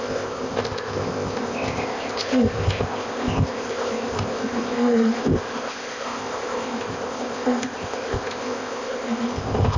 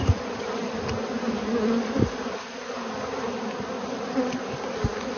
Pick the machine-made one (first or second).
first